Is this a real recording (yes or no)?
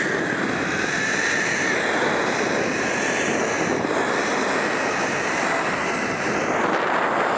yes